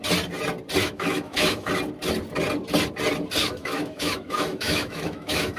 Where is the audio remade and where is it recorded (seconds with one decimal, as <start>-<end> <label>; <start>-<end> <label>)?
0.0-0.8 recorded; 0.8-1.7 remade; 1.7-3.4 recorded; 3.4-5.6 remade